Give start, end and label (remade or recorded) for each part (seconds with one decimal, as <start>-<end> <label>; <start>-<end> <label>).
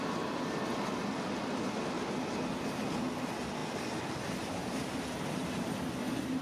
0.0-6.4 recorded